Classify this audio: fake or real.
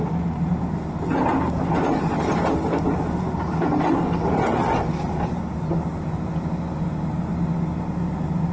real